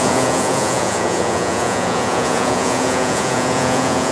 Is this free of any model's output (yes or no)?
no